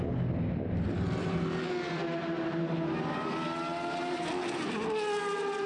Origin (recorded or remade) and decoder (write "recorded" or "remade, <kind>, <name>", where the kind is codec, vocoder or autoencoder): recorded